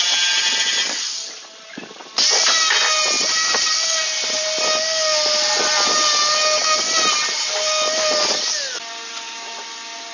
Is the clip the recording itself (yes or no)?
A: yes